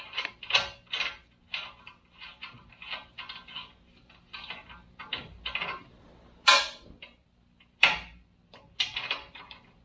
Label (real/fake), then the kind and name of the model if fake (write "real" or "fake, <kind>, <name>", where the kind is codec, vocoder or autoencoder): real